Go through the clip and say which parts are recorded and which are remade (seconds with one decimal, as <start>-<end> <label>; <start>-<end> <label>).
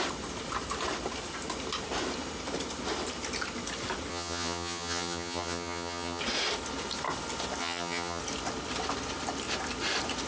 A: 0.0-4.1 recorded; 4.1-6.2 remade; 6.2-7.6 recorded; 7.6-8.2 remade; 8.2-10.3 recorded